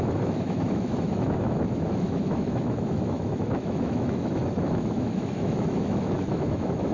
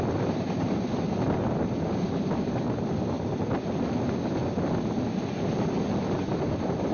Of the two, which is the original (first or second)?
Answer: second